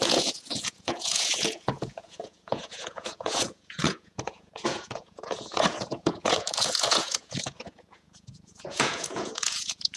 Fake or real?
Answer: fake